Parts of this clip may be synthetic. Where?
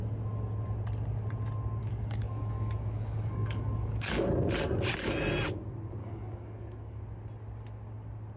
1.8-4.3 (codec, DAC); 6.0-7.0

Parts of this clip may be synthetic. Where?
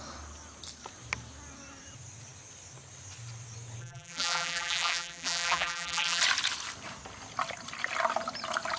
3.8-6.2 (vocoder, BigVGAN v2)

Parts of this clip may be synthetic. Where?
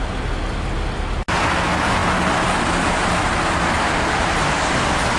none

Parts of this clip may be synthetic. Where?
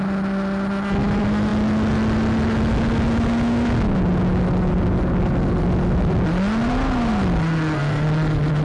none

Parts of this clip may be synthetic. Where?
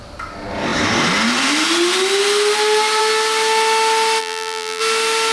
4.2-4.8 (vocoder, BigVGAN v2)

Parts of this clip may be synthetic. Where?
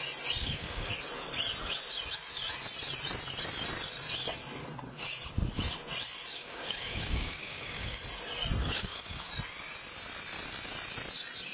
0.4-0.9 (codec, DAC); 6.3-8.0; 8.6-9.3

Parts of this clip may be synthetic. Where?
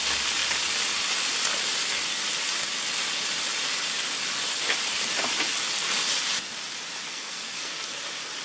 7.1-8.0 (codec, SNAC)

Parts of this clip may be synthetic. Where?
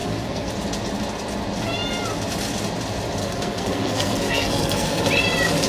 0.0-0.5 (codec, SNAC); 3.2-5.0